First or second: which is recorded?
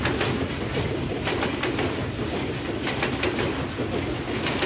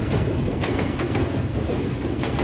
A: first